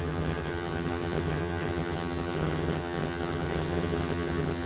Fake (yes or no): yes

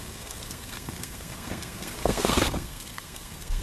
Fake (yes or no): yes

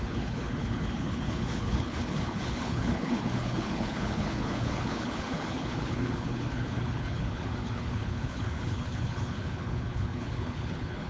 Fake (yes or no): yes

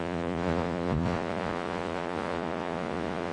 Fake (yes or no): yes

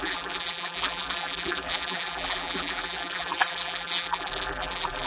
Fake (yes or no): yes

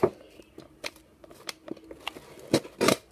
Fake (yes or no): no